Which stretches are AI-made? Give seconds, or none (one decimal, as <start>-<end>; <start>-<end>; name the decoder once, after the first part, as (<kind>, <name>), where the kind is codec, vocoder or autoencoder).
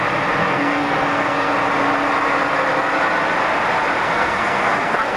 0.4-1.5 (codec, SNAC); 4.0-5.2